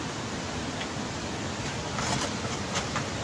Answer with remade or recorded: recorded